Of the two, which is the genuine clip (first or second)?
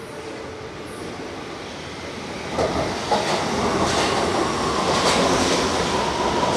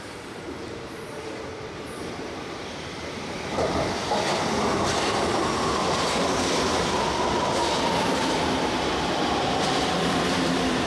first